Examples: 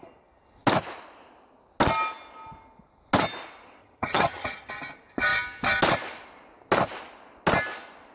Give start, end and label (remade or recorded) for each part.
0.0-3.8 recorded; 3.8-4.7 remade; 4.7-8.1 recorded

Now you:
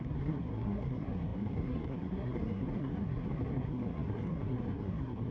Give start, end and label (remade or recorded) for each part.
0.0-5.3 remade

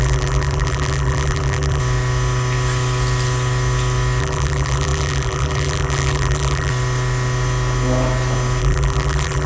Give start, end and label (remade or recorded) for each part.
0.0-1.8 remade; 1.8-4.2 recorded; 4.2-6.7 remade; 6.7-8.6 recorded; 8.6-9.5 remade